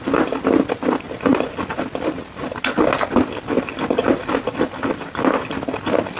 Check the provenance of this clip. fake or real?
real